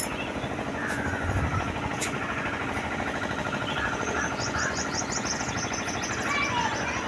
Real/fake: fake